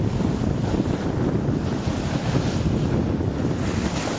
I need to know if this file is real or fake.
real